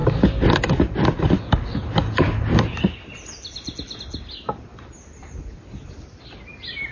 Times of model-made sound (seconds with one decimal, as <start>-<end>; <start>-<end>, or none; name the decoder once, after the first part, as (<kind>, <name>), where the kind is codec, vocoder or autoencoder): none